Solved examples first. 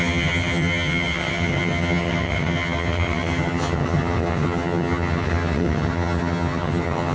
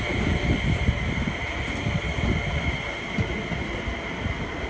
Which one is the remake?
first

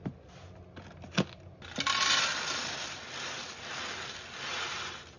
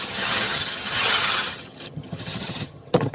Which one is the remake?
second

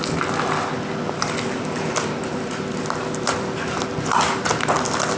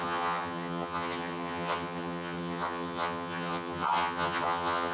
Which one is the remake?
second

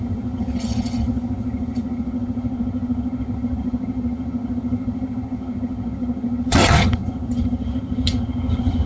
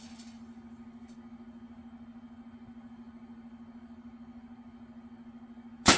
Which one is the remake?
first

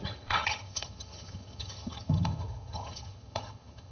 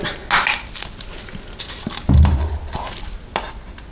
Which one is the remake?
first